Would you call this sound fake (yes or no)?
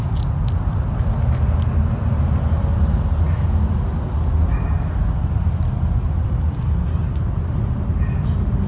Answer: no